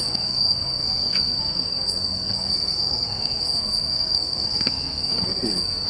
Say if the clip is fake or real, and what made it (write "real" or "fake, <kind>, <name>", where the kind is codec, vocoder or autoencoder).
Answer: fake, codec, SNAC